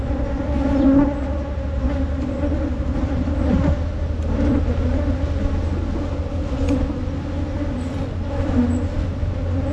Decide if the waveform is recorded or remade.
recorded